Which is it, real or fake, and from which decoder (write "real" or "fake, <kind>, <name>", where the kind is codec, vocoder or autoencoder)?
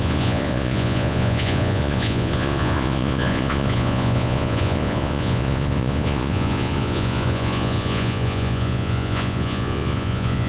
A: fake, vocoder, Vocos